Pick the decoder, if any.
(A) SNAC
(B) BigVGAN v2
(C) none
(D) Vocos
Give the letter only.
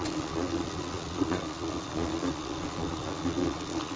D